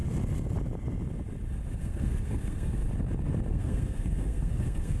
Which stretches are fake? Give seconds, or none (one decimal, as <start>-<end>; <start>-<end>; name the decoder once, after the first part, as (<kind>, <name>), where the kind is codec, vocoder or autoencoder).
1.8-2.8 (codec, SNAC); 3.5-5.0